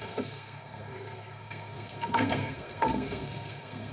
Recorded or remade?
remade